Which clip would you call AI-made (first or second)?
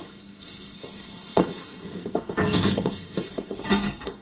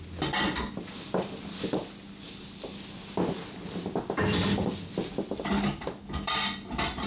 first